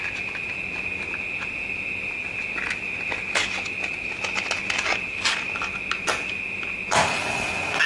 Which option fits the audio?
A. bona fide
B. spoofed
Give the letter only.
A